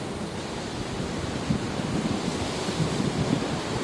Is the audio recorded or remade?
remade